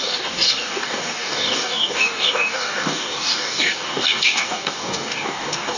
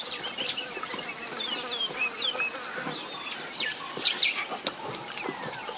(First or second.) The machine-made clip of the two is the first